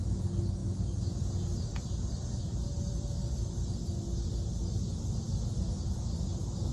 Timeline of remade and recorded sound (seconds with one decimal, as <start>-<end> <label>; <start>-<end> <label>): 0.0-2.9 recorded; 2.9-4.4 remade; 4.4-6.7 recorded